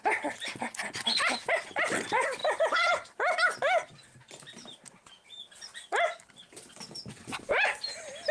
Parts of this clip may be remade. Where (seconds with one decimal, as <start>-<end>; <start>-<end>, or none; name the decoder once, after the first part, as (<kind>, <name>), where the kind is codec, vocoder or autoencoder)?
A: none